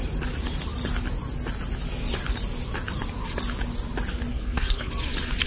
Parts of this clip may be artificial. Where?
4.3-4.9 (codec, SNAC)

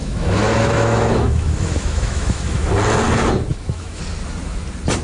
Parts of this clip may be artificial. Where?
0.0-2.7 (autoencoder, DAC-VAE); 3.5-4.0

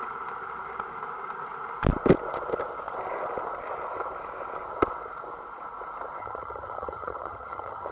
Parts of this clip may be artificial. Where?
6.2-7.9 (vocoder, HiFi-GAN)

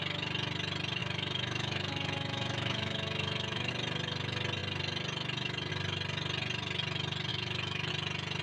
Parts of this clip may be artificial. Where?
1.0-3.7 (autoencoder, DAC-VAE); 7.3-7.9

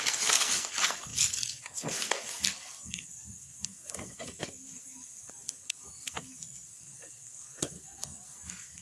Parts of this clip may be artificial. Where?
0.0-8.8 (codec, SNAC)

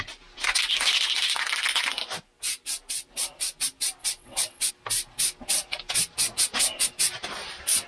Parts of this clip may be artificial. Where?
4.0-4.7 (vocoder, WaveNeXt)

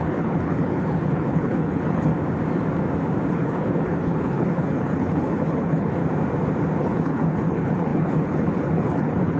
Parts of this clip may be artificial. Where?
0.0-2.1 (codec, HILCodec); 3.3-6.0; 6.8-9.4